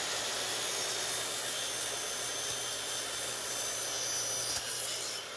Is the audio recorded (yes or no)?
yes